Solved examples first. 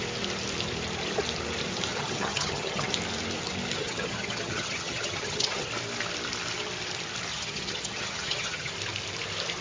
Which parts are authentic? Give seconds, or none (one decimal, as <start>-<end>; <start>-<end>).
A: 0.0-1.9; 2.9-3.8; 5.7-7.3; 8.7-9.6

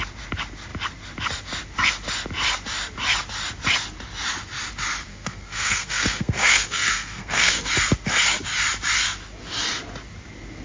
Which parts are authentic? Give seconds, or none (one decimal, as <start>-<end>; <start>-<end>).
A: 0.0-5.1; 7.7-10.6

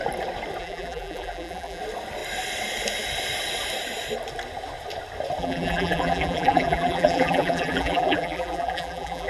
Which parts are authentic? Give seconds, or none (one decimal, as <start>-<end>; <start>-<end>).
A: 0.0-0.6; 1.8-5.4